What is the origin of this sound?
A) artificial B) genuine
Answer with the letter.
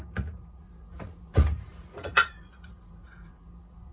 A